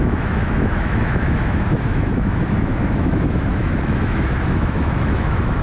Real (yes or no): no